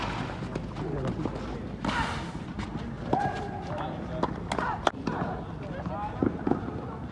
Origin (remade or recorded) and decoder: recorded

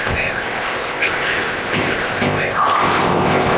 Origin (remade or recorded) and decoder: remade, codec, ZipCodec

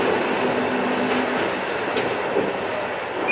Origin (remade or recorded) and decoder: recorded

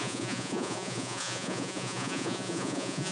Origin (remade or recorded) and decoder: remade, vocoder, Vocos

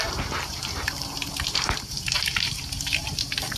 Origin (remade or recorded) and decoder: remade, vocoder, BigVGAN v2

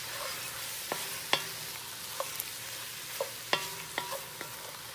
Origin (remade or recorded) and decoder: recorded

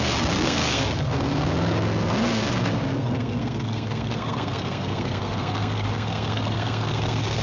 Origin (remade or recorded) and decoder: remade, codec, SNAC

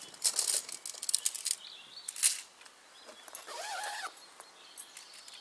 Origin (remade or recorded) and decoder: recorded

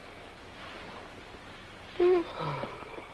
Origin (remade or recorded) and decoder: recorded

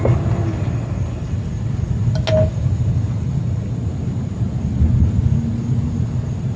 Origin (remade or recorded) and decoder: recorded